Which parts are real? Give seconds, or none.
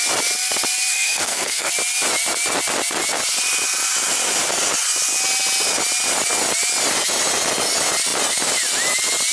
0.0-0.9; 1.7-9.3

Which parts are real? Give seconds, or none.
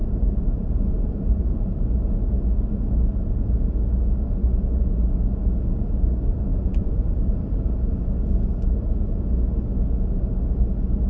1.7-6.5; 7.8-11.1